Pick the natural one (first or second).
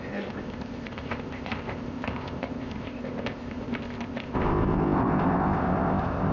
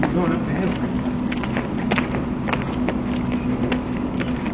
second